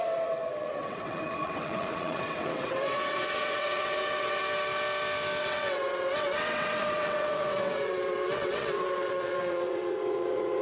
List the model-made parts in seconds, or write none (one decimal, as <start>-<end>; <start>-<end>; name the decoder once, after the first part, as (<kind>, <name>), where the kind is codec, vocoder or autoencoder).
0.0-4.4 (vocoder, WaveNeXt); 5.4-10.6